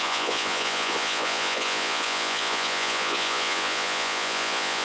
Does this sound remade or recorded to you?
remade